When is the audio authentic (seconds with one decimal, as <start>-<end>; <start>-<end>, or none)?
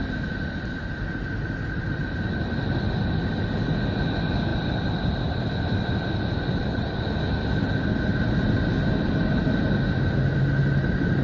0.0-4.5; 7.8-11.2